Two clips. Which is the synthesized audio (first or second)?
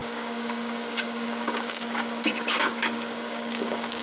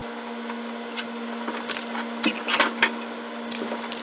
first